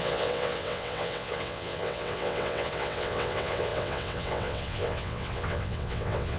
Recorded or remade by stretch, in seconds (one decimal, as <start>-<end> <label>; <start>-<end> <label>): 0.0-6.4 remade